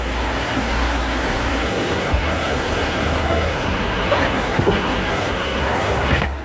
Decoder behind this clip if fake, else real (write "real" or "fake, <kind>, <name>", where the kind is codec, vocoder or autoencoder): fake, codec, SNAC